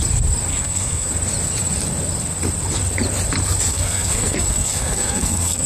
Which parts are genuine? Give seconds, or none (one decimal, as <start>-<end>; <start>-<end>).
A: 0.0-0.5; 1.1-3.7